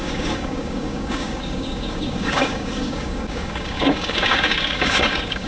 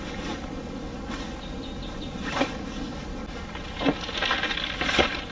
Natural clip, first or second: second